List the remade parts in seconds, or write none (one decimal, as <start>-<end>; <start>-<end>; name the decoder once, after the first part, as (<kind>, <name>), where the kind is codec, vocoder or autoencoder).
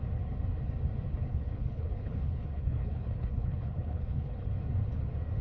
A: 1.3-4.5 (codec, HILCodec)